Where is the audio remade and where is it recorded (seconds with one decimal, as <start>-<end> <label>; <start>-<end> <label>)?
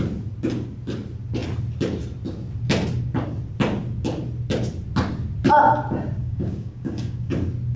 0.0-6.2 recorded; 6.2-7.3 remade; 7.3-7.8 recorded